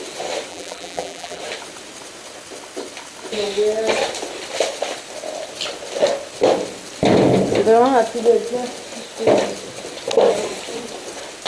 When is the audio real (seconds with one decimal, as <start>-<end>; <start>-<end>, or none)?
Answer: 0.0-0.5; 1.4-11.5